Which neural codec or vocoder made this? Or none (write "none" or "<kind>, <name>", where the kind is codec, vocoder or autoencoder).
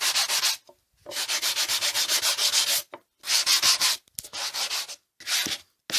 none